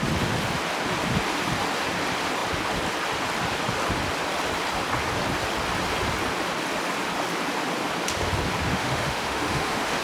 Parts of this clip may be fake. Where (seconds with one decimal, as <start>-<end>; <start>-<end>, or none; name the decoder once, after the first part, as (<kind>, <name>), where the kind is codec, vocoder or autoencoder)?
8.7-10.0 (autoencoder, DAC-VAE)